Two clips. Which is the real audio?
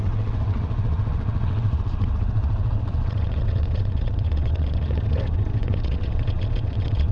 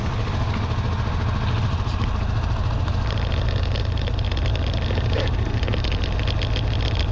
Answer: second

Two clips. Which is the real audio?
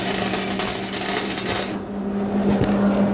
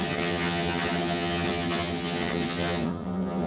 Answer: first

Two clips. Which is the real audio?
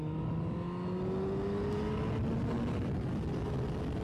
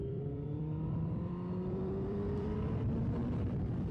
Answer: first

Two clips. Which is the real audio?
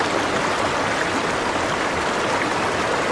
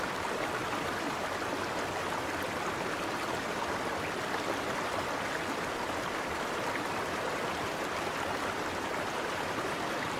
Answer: first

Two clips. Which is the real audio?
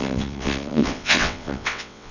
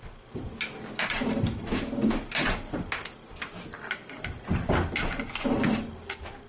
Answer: second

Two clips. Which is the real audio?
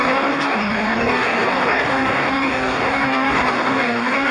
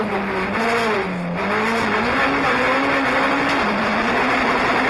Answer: second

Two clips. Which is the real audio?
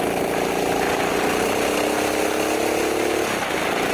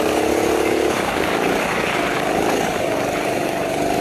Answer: first